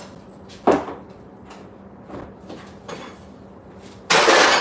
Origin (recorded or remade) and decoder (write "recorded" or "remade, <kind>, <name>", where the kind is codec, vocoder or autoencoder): recorded